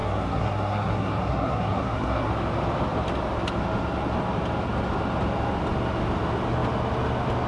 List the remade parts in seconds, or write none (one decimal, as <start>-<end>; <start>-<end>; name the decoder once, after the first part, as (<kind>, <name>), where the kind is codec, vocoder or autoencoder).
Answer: 0.0-2.3 (codec, SNAC)